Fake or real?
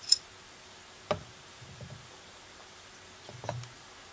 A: real